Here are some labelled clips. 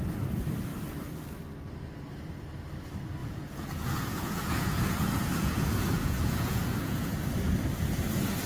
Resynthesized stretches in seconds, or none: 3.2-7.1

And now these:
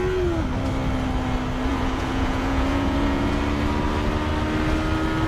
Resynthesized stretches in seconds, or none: 1.7-3.4

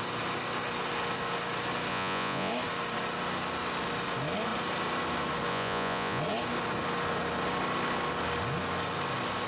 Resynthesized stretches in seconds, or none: 1.9-2.5; 5.5-6.2

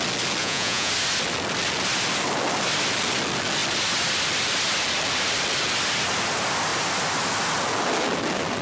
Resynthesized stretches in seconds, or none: 0.4-0.9